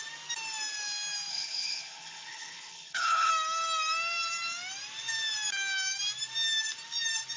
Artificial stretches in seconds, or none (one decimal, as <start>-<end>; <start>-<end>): 1.3-3.3